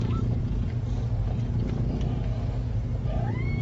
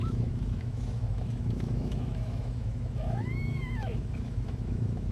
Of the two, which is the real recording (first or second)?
first